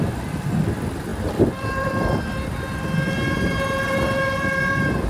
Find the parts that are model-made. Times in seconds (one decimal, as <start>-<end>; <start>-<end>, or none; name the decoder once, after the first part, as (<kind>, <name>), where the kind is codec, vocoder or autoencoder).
1.1-2.6 (vocoder, BigVGAN v2)